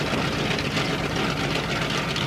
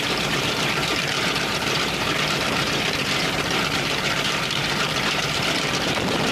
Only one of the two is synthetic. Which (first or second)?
second